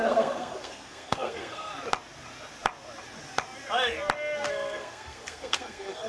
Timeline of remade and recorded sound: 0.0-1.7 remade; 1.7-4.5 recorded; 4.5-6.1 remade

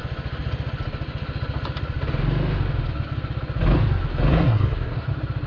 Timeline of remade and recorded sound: 0.0-4.3 recorded; 4.3-5.1 remade; 5.1-5.5 recorded

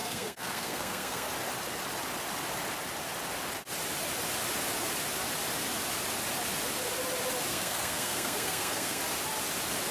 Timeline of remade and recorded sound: 0.0-1.3 remade; 1.3-7.5 recorded; 7.5-9.0 remade; 9.0-9.9 recorded

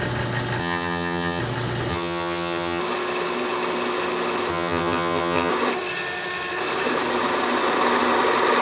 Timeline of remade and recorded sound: 0.0-0.6 recorded; 0.6-1.4 remade; 1.4-1.9 recorded; 1.9-2.8 remade; 2.8-4.5 recorded; 4.5-5.5 remade; 5.5-8.6 recorded

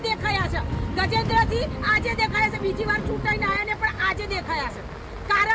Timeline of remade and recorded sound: 0.0-5.5 recorded

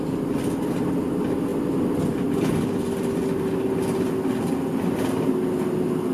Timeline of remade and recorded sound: 0.0-6.1 recorded

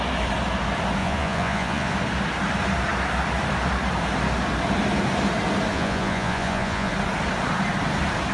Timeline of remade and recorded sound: 0.0-1.0 recorded; 1.0-1.9 remade; 1.9-5.7 recorded; 5.7-6.9 remade; 6.9-8.3 recorded

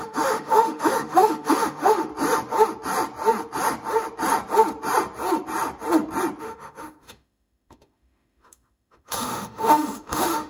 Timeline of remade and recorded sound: 0.0-2.1 remade; 2.1-6.4 recorded; 6.4-10.5 remade